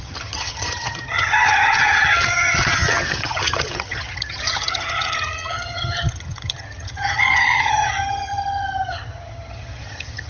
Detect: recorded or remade remade